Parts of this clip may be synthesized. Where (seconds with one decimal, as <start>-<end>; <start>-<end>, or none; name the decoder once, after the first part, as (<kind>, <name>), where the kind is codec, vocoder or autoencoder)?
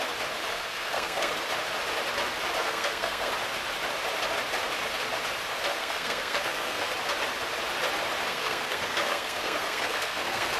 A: 0.5-1.3 (codec, SNAC); 2.6-3.3; 5.7-6.9; 8.3-10.6